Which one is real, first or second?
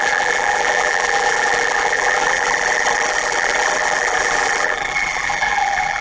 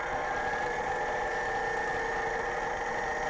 second